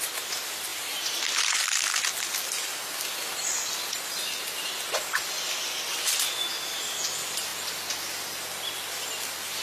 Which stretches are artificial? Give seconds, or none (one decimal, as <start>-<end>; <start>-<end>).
0.7-1.2